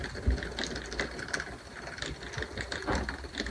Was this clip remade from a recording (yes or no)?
no